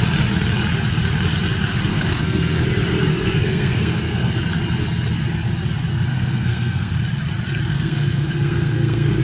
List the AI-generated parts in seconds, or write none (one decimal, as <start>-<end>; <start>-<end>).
1.9-2.6; 3.1-4.3; 6.1-6.9; 7.7-9.2